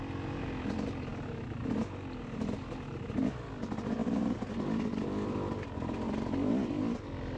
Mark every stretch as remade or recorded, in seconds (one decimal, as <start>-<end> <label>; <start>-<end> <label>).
0.0-7.4 recorded